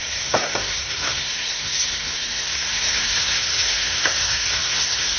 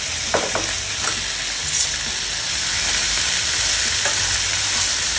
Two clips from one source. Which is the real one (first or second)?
second